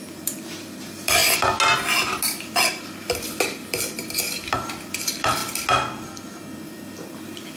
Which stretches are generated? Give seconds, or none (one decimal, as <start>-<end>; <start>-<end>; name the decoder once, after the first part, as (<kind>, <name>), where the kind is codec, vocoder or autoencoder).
0.0-1.2 (vocoder, BigVGAN v2); 2.6-5.4; 6.4-7.6